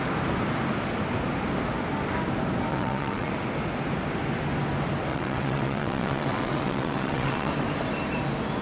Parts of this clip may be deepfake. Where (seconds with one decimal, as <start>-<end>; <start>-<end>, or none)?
2.7-3.3; 5.1-7.5